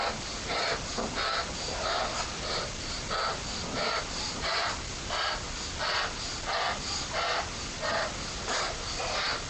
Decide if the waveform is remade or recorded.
recorded